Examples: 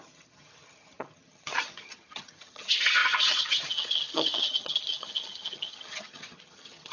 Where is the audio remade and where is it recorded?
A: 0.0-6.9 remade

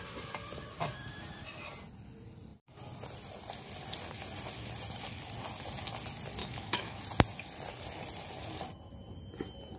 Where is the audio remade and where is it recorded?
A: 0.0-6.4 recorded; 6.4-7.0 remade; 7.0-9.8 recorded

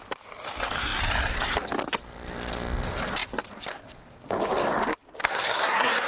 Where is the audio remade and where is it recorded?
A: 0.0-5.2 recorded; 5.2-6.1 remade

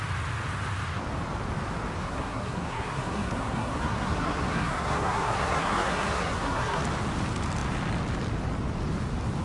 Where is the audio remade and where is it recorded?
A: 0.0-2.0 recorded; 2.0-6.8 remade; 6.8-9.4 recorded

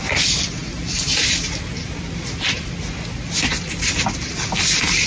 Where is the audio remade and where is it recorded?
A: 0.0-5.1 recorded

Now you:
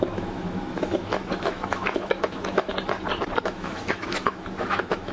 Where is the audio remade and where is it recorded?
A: 0.0-2.7 remade; 2.7-3.4 recorded; 3.4-5.1 remade

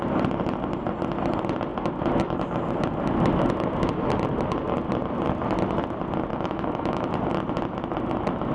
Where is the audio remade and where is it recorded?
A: 0.0-6.3 recorded; 6.3-7.1 remade; 7.1-8.5 recorded